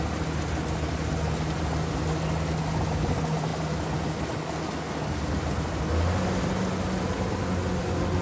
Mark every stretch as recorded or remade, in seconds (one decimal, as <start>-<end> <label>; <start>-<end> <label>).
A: 0.0-8.2 recorded